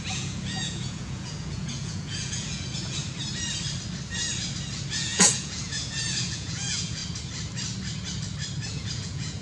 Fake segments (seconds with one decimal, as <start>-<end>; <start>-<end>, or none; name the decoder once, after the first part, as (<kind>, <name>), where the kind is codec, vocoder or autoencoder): 0.0-3.0 (vocoder, Vocos); 5.0-7.0; 8.7-9.4